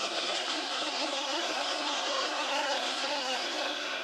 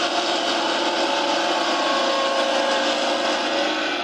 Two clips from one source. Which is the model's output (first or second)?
first